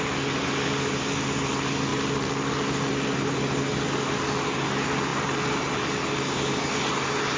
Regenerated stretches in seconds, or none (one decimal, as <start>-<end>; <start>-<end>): none